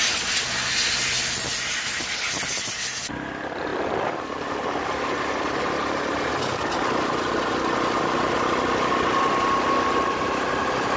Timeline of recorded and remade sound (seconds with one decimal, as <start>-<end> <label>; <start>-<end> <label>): 0.0-11.0 recorded